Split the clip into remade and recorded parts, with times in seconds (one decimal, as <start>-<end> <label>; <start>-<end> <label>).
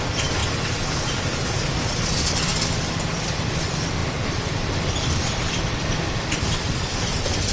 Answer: 0.0-0.4 remade; 0.4-2.0 recorded; 2.0-2.5 remade; 2.5-3.1 recorded; 3.1-7.5 remade